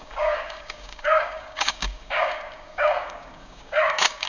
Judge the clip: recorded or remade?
remade